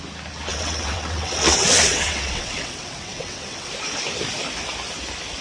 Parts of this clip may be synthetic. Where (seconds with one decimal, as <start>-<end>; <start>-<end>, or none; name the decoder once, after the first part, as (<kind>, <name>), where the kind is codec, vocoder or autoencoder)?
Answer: 0.5-3.7 (vocoder, WaveNeXt)